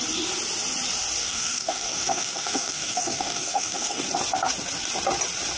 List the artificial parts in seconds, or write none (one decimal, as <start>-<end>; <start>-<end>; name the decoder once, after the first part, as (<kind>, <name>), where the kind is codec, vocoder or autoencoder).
1.2-4.0 (codec, DAC)